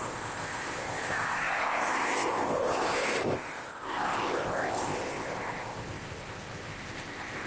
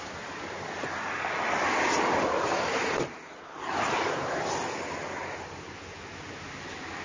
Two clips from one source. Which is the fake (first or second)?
first